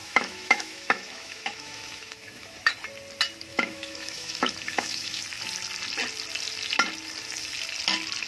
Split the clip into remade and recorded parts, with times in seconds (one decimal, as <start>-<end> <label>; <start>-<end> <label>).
0.0-2.7 remade; 2.7-3.5 recorded; 3.5-5.2 remade; 5.2-8.3 recorded